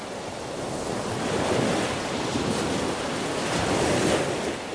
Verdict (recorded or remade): recorded